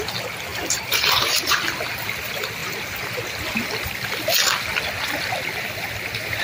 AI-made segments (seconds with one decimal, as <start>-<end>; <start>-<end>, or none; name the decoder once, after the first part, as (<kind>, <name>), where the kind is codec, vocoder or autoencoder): 0.5-1.6 (vocoder, BigVGAN v2)